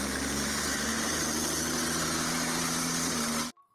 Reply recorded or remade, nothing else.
remade